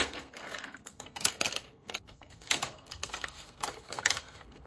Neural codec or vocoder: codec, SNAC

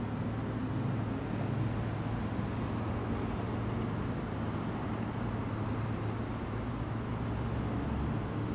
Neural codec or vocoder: none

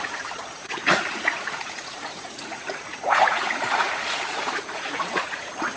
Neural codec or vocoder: vocoder, Vocos